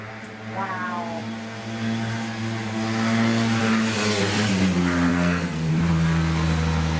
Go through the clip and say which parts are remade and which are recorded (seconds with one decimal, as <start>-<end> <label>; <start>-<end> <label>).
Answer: 0.0-5.1 recorded; 5.1-5.7 remade; 5.7-7.0 recorded